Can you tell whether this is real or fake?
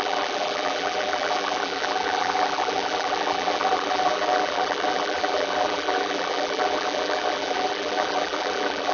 fake